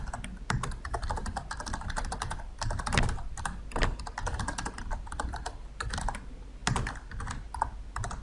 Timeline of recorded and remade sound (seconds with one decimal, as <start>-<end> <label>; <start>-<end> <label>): 0.0-8.2 recorded